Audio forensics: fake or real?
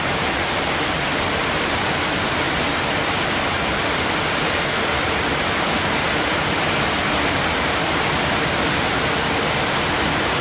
real